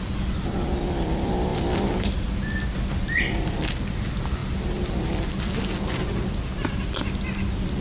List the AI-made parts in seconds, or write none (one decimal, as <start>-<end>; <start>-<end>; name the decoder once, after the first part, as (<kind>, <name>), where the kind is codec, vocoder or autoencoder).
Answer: none